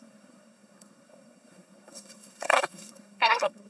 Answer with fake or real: fake